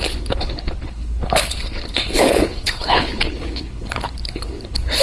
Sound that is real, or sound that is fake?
fake